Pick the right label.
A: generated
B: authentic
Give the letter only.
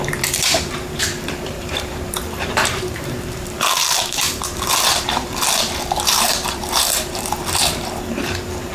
A